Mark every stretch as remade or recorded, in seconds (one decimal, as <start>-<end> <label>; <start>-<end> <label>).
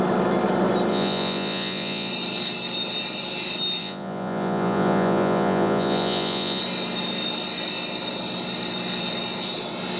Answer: 0.0-0.9 recorded; 0.9-2.1 remade; 2.1-3.8 recorded; 3.8-6.6 remade; 6.6-10.0 recorded